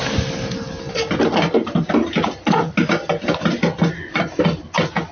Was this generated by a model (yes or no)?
no